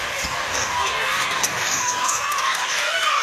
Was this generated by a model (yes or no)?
yes